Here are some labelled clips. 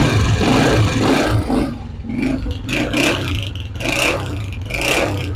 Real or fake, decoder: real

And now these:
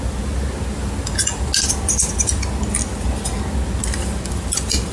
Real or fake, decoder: real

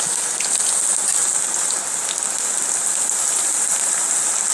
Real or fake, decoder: real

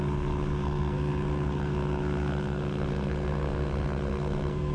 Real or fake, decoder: fake, codec, SNAC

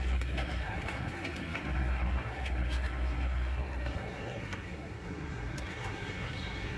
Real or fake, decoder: fake, codec, SNAC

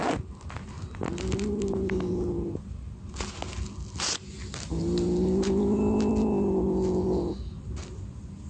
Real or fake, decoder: real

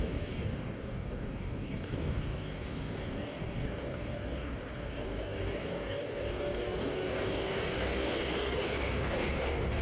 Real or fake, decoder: fake, codec, DAC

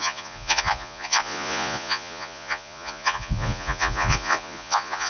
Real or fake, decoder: fake, vocoder, Vocos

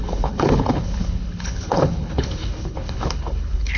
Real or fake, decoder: fake, codec, HILCodec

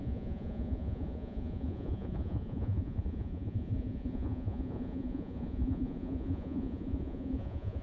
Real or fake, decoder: fake, vocoder, Vocos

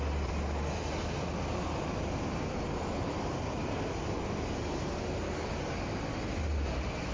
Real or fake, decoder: real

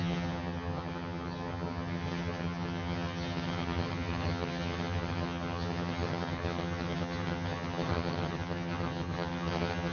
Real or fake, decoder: fake, vocoder, HiFi-GAN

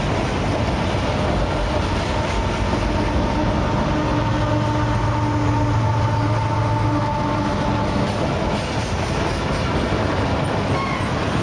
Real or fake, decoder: real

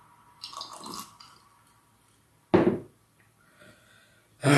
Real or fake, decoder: real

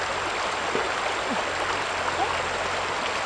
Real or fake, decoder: real